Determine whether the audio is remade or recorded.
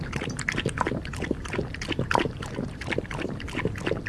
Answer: recorded